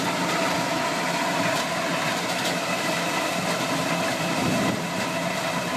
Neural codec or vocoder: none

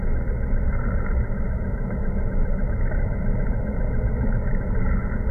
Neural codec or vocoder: none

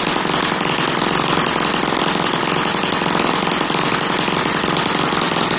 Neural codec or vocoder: none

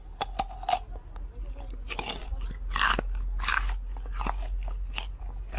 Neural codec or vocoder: none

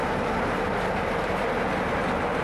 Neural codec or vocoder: none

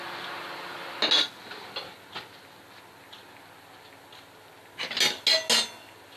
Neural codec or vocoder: none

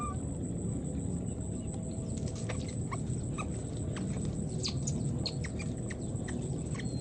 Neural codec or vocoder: none